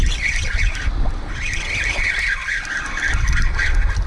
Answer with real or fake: real